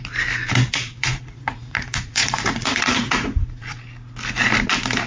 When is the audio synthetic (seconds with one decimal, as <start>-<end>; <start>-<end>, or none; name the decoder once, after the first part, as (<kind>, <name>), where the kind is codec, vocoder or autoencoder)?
0.7-3.8 (vocoder, Vocos)